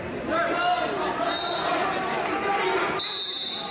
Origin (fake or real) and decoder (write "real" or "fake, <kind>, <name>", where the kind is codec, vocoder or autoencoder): real